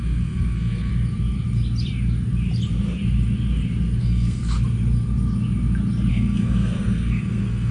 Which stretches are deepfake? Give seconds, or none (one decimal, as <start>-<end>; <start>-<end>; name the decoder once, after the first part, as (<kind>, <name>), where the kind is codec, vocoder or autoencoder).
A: 0.0-0.9 (codec, SNAC); 4.0-4.4; 6.1-7.7